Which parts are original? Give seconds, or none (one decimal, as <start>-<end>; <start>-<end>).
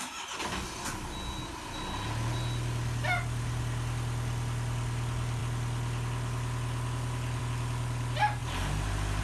0.0-9.2